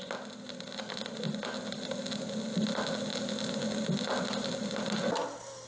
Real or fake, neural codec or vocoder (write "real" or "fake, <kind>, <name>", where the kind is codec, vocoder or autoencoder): real